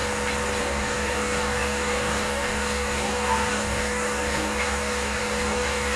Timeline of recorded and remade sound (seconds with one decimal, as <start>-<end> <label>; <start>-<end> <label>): 0.0-0.6 recorded; 0.6-6.0 remade